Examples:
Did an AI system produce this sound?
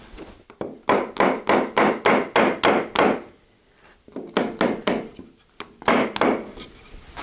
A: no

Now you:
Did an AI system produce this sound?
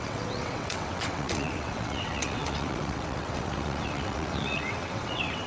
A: yes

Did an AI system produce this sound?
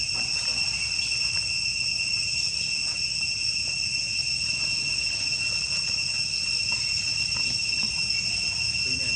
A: no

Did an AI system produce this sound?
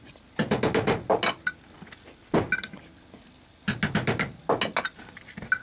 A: no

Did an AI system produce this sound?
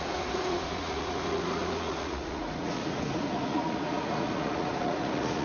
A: yes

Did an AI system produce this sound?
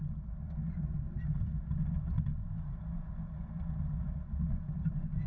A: no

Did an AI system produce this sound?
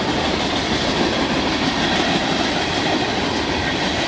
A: no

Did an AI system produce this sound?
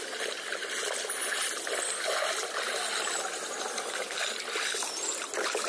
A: no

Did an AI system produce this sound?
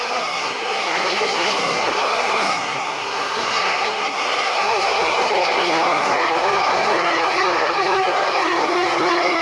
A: yes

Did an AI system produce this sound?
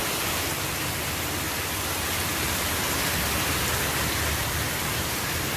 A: no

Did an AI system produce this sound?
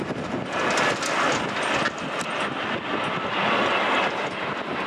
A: no